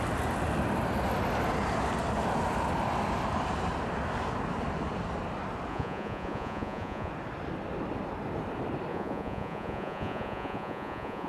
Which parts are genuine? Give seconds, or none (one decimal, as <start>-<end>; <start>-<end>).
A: 0.0-5.7; 7.1-8.9